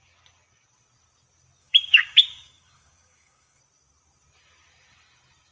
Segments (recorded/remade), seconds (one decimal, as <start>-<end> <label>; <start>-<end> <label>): 0.0-1.6 recorded; 1.6-3.6 remade; 3.6-5.5 recorded